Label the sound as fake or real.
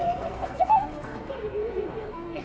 fake